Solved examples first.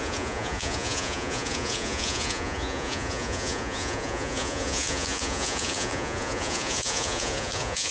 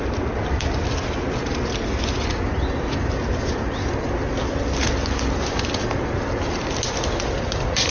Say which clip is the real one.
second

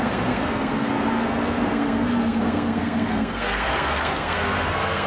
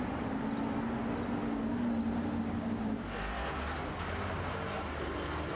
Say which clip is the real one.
second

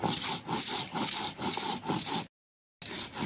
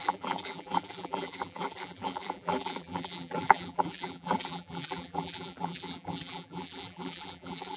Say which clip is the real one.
first